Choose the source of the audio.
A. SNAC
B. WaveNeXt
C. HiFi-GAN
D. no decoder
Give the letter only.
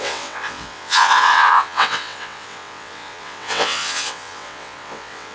B